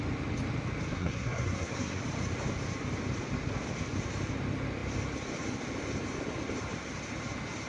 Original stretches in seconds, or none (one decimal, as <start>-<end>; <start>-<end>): 0.0-0.9; 2.0-7.7